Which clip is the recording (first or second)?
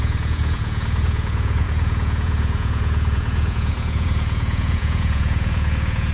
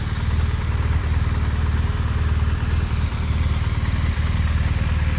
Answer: second